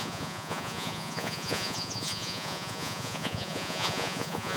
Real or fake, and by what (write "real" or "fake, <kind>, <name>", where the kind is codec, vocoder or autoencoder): fake, vocoder, Vocos